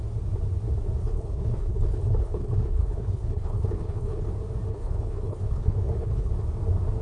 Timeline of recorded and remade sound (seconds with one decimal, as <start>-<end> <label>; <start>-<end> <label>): 0.0-1.0 recorded; 1.0-4.3 remade; 4.3-4.7 recorded; 4.7-6.3 remade; 6.3-7.0 recorded

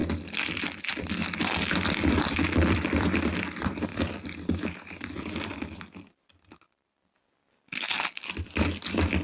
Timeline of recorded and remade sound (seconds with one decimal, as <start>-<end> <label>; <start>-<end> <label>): 0.0-9.2 remade

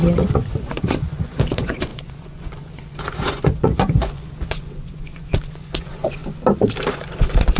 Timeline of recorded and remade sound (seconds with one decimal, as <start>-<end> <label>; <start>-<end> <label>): 0.0-6.2 remade; 6.2-6.9 recorded; 6.9-7.6 remade